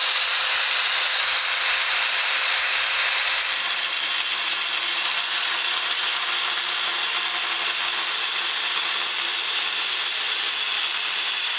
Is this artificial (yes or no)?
no